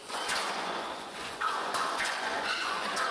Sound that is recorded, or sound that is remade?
remade